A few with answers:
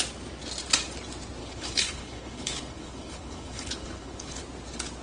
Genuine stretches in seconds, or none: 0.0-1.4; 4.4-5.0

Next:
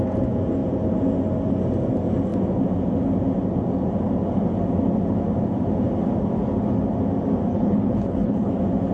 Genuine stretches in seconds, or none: 0.0-7.5; 8.5-8.9